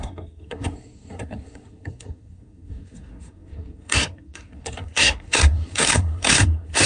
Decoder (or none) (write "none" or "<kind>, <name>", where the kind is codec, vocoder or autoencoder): codec, SNAC